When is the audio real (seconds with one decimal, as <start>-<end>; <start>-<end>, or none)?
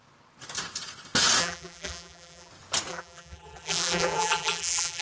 0.0-1.4; 2.5-2.9